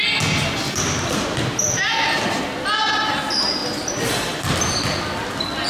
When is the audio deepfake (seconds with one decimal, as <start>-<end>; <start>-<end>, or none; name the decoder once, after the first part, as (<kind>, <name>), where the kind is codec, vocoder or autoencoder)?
none

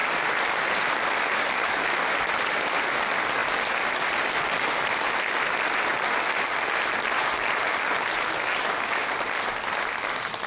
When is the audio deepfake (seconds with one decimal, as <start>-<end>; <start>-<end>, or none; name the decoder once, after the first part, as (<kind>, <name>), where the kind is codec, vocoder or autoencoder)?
none